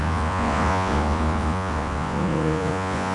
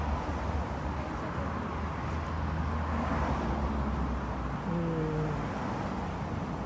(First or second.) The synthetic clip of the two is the first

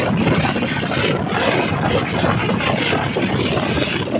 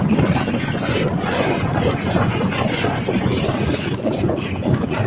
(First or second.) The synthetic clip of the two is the second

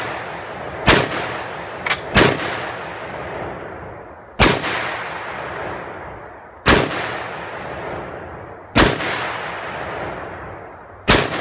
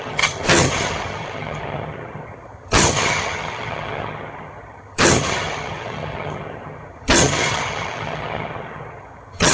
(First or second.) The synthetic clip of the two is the second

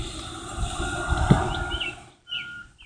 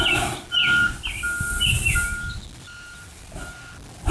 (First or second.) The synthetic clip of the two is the first